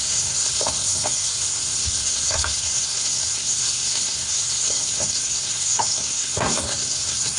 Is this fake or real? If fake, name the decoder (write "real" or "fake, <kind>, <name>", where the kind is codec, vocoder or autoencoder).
fake, codec, SNAC